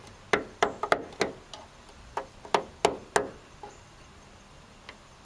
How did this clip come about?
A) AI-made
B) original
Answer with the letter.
B